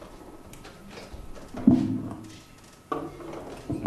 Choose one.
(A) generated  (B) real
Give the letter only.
B